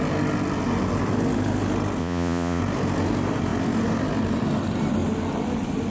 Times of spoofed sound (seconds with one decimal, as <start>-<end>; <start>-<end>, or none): 2.0-2.6